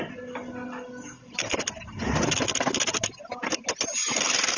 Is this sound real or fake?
real